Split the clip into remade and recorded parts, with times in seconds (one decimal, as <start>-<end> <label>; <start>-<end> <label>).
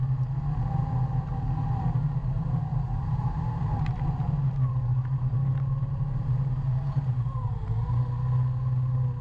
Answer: 0.0-2.2 recorded; 2.2-7.5 remade; 7.5-9.2 recorded